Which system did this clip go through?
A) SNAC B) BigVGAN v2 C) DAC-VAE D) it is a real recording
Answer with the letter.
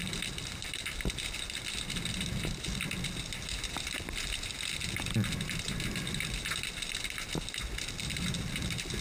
D